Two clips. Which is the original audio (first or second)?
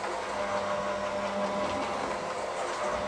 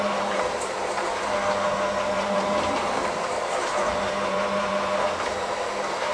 first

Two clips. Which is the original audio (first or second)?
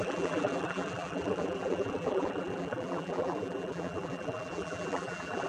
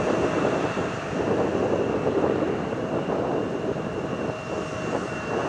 second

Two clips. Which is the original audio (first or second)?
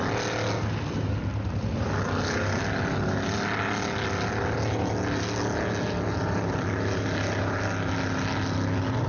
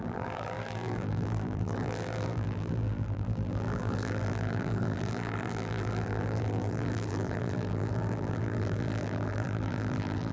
first